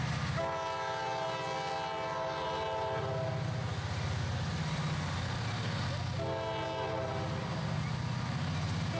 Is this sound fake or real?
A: real